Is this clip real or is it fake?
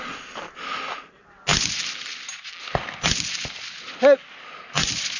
real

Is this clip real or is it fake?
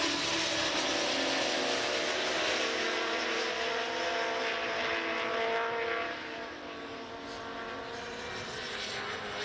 real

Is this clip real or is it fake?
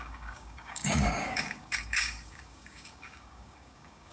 fake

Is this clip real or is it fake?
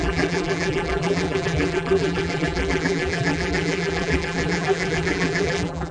fake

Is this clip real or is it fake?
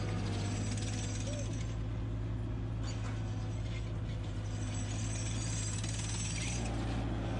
real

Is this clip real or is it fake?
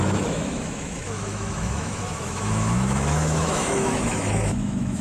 fake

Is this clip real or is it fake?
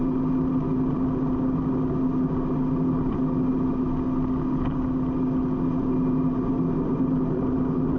real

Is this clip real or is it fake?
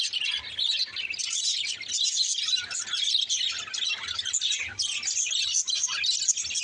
real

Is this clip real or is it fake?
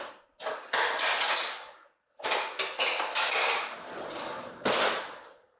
real